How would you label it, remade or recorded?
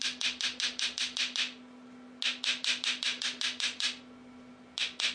recorded